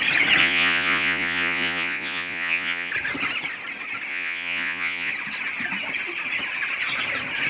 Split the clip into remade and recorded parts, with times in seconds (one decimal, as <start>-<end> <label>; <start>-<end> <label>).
0.0-0.4 recorded; 0.4-2.9 remade; 2.9-4.1 recorded; 4.1-5.1 remade; 5.1-7.5 recorded